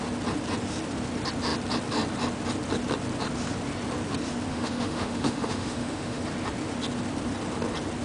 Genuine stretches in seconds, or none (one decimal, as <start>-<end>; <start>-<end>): 0.0-4.5; 6.2-8.0